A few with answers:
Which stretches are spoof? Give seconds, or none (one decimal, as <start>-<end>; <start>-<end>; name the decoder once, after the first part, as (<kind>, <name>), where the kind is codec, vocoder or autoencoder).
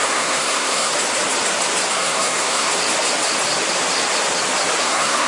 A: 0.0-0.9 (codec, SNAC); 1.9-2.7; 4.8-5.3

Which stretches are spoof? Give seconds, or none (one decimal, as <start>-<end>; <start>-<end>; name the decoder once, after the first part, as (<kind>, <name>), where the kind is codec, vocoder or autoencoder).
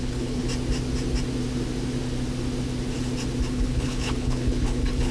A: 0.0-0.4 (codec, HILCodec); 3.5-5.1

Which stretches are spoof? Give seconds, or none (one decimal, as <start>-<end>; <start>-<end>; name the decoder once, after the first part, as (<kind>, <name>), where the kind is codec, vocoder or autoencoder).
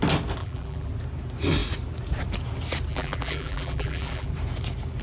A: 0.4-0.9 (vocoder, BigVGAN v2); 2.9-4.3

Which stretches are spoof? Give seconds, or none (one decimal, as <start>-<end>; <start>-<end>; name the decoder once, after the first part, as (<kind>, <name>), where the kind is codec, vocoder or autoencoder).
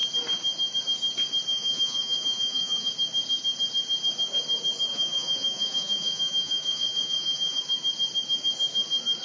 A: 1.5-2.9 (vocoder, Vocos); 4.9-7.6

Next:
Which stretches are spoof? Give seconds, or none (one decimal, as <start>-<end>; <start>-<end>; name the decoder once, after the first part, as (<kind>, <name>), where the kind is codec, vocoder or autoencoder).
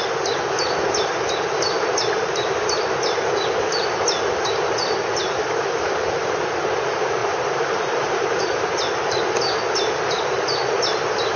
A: 7.2-9.2 (vocoder, BigVGAN v2)